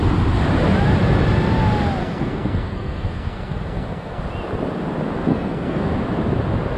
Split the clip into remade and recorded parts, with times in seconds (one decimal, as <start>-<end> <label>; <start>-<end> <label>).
0.0-2.0 recorded; 2.0-4.2 remade; 4.2-5.3 recorded; 5.3-5.9 remade; 5.9-6.8 recorded